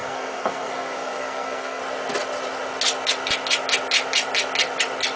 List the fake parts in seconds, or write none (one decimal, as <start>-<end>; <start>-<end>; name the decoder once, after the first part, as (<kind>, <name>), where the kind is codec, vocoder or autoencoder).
0.0-1.8 (codec, SNAC)